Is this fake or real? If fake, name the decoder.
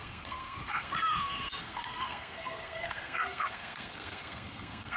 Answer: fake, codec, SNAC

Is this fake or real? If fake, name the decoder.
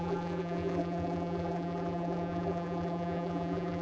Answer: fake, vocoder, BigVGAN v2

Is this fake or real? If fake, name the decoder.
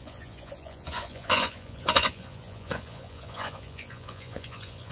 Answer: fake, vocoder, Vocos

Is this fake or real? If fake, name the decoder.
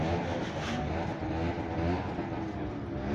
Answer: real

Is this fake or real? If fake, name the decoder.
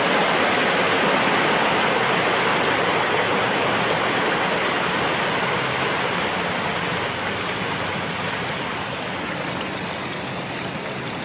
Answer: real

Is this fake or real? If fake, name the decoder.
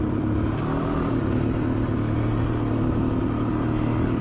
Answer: real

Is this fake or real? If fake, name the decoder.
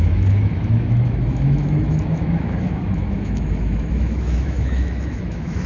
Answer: fake, autoencoder, DAC-VAE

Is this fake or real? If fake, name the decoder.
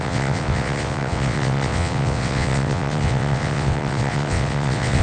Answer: fake, vocoder, WaveNeXt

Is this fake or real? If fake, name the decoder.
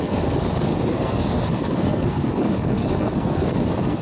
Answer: fake, codec, SNAC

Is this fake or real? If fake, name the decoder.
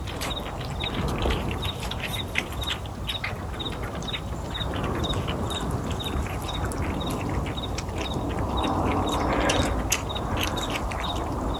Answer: real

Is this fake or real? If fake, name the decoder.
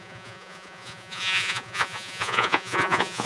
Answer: fake, vocoder, Vocos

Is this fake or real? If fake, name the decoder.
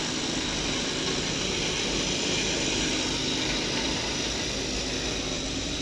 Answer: fake, vocoder, BigVGAN v2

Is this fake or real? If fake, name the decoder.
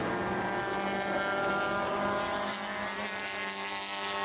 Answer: real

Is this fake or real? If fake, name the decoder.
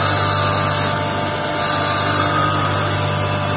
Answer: real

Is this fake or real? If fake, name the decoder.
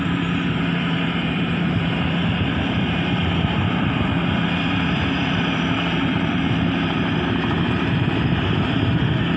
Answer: fake, vocoder, BigVGAN v2